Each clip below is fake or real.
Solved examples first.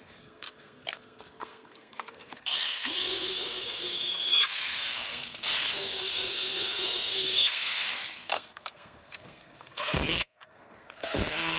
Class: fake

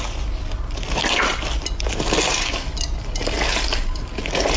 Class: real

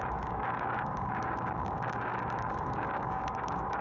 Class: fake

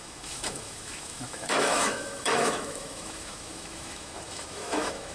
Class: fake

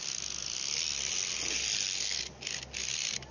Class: real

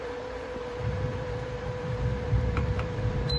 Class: fake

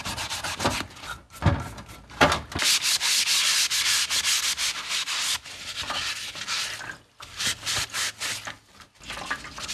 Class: real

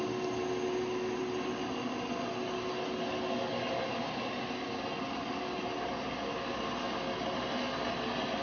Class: real